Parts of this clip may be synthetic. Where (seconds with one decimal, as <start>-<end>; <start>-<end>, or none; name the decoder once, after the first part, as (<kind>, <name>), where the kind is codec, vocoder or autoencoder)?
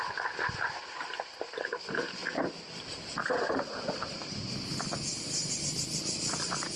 none